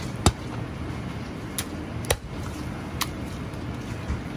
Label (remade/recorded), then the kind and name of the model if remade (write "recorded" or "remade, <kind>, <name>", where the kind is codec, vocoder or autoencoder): recorded